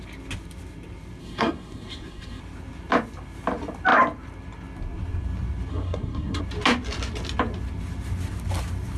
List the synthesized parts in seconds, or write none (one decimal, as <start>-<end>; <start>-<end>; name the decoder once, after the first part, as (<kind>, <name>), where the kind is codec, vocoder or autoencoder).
1.2-2.4 (codec, SNAC); 5.7-6.4